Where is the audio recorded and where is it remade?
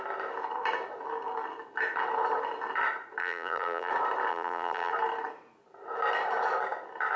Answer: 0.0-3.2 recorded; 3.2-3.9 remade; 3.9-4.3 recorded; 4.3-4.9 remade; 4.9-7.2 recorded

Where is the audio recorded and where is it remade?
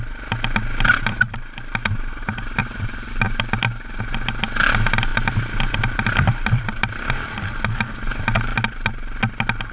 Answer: 0.0-2.6 recorded; 2.6-3.1 remade; 3.1-5.1 recorded; 5.1-7.1 remade; 7.1-9.7 recorded